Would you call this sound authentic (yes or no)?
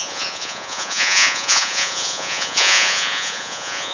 no